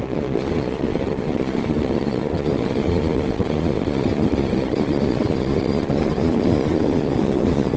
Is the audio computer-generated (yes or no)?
yes